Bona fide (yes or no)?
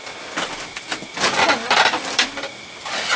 yes